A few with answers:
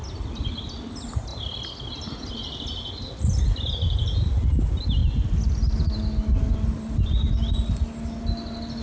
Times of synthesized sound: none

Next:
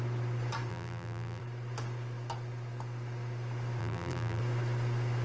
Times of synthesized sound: 0.7-1.4 (vocoder, BigVGAN v2); 3.8-4.4

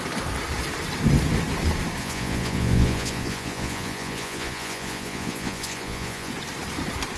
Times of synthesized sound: 2.0-6.3 (vocoder, Vocos)

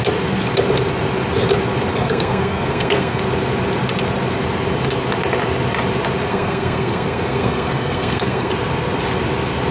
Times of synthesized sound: 1.9-3.2 (codec, SNAC); 6.3-8.5

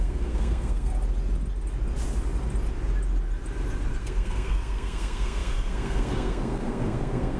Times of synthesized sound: 0.0-0.9 (codec, SNAC); 4.0-7.4

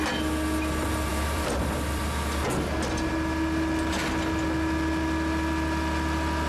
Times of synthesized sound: 1.1-2.0 (vocoder, BigVGAN v2)

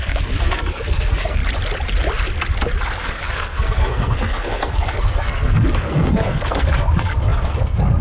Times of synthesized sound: 0.0-1.4 (codec, SNAC); 3.0-8.0